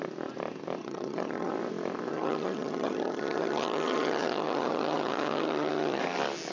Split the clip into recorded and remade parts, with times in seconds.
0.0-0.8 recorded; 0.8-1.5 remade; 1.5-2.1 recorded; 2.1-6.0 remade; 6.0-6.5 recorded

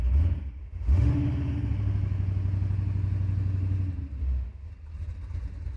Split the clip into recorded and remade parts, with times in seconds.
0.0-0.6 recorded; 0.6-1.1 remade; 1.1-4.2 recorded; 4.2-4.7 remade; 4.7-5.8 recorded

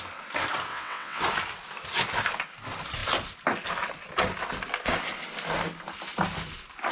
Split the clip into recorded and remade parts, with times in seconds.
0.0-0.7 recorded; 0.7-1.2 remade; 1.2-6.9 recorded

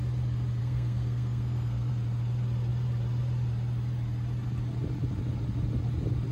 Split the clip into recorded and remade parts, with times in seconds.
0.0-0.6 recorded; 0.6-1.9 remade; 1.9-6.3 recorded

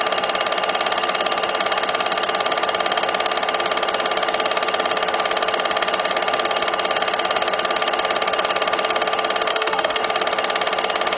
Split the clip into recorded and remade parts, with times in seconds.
0.0-9.5 recorded; 9.5-10.0 remade; 10.0-11.2 recorded

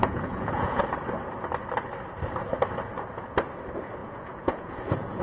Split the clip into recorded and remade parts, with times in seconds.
0.0-0.8 remade; 0.8-4.0 recorded; 4.0-5.2 remade

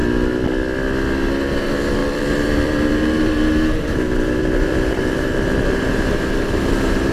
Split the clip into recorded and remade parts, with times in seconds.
0.0-1.6 recorded; 1.6-7.1 remade